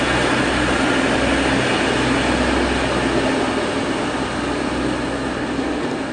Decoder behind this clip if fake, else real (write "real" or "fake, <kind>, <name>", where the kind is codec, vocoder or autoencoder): real